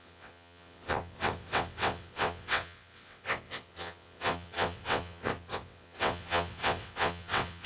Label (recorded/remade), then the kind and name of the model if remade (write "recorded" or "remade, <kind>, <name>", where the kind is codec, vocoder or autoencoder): remade, vocoder, WaveNeXt